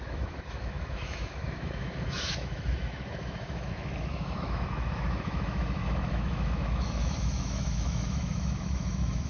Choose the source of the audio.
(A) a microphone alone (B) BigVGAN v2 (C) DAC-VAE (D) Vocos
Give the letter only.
C